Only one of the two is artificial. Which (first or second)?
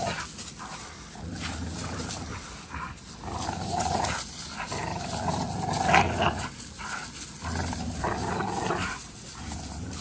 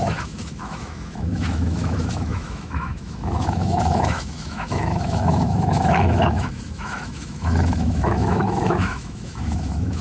second